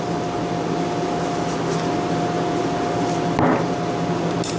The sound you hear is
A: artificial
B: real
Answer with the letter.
B